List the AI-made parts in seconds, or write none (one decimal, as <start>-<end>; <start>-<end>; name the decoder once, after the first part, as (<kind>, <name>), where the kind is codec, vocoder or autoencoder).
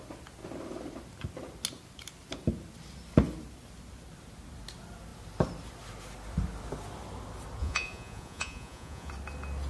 7.6-9.1 (vocoder, Vocos)